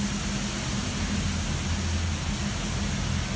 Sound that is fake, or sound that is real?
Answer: real